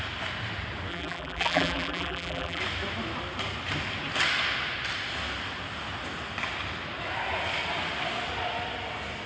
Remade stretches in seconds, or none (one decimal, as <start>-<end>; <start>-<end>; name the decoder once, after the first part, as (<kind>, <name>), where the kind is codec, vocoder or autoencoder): 0.9-2.6 (vocoder, BigVGAN v2)